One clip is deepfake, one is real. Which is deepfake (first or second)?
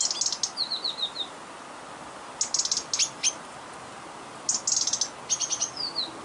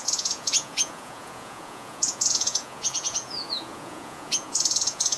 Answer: second